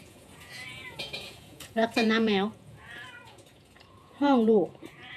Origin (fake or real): fake